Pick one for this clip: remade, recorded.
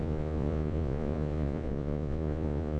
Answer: remade